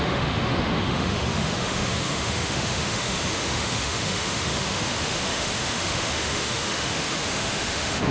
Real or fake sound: fake